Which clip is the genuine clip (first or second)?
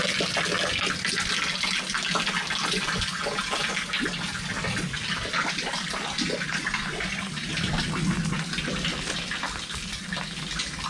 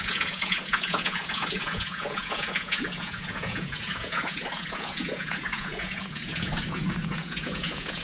first